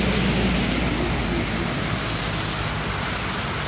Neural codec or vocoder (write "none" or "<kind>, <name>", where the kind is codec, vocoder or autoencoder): none